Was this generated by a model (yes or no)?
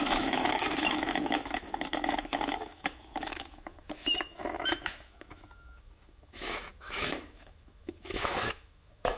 yes